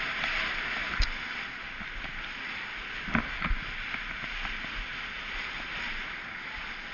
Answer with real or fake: real